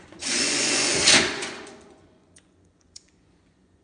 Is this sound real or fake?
fake